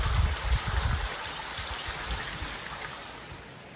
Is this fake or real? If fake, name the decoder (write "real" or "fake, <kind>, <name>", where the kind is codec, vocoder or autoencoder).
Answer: real